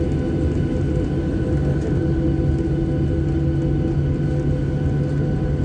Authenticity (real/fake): real